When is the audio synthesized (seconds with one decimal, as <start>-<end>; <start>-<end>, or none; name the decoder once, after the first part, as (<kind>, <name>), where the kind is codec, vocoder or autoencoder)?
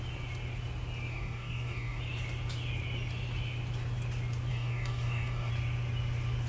1.1-2.0 (codec, DAC); 4.5-5.5